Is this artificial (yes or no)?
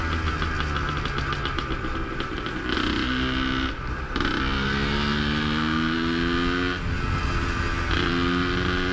no